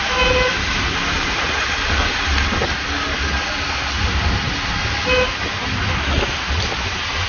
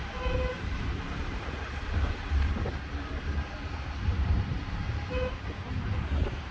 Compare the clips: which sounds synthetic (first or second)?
second